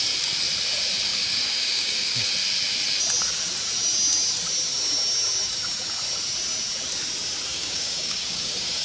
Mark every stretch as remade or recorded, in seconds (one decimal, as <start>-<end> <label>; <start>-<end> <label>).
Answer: 0.0-1.1 recorded; 1.1-2.3 remade; 2.3-7.5 recorded; 7.5-8.8 remade